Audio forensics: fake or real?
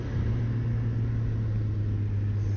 real